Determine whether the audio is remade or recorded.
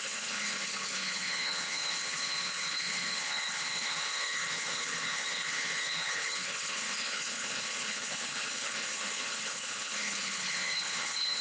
remade